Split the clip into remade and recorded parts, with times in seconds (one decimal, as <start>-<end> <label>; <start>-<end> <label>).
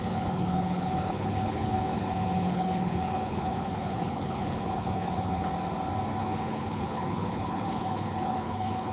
0.0-5.5 remade; 5.5-6.2 recorded; 6.2-8.9 remade